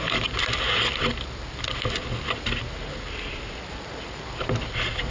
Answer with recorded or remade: recorded